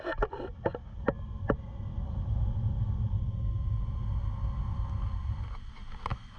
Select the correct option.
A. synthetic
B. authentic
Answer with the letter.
B